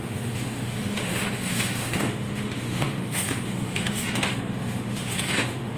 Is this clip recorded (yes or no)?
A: no